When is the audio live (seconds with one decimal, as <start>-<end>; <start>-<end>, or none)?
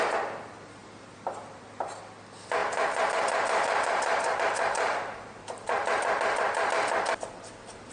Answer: 0.0-2.6; 6.7-7.9